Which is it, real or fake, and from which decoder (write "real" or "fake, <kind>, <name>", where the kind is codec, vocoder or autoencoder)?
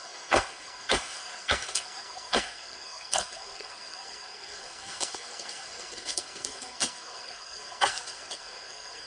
fake, codec, SNAC